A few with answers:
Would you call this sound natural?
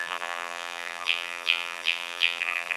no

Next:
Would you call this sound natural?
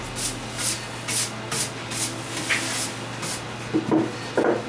yes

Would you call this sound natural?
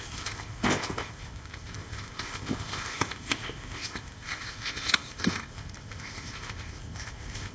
no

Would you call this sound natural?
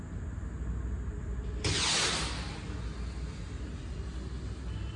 yes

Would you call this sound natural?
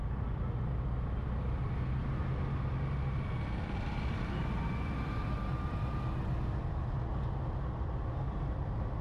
yes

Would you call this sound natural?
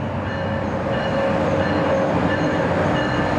yes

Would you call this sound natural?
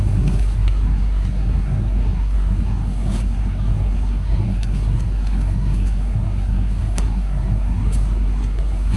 no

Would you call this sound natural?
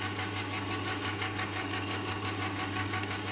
no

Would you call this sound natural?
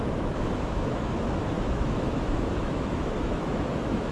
no